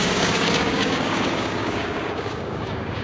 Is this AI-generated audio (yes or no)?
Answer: yes